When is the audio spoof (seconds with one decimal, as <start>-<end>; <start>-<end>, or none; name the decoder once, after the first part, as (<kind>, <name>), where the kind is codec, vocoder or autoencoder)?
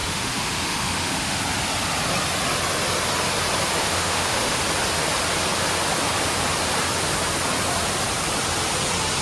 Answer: 0.0-1.4 (autoencoder, DAC-VAE); 3.8-4.6